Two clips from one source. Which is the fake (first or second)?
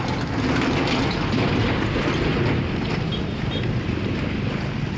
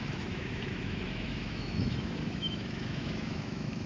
second